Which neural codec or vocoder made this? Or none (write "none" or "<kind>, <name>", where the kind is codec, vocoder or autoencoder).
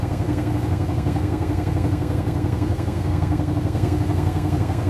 codec, SNAC